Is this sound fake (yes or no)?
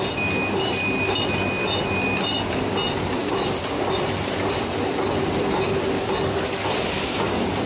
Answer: no